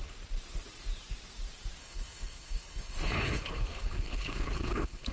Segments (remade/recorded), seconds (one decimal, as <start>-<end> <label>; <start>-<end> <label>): 0.0-1.8 recorded; 1.8-5.1 remade